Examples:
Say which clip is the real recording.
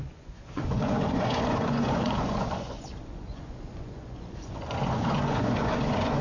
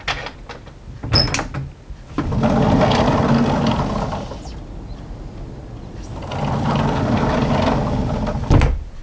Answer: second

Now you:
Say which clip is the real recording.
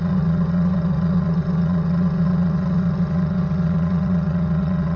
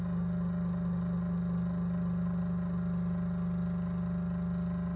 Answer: second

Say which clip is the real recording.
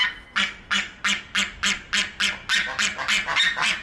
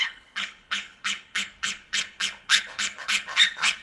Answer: first